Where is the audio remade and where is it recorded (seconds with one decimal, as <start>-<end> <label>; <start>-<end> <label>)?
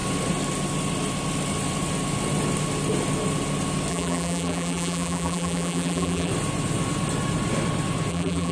0.0-3.9 recorded; 3.9-6.3 remade; 6.3-8.1 recorded; 8.1-8.5 remade